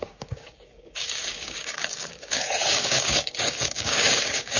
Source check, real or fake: fake